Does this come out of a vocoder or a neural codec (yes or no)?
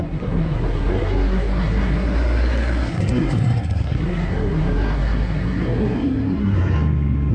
yes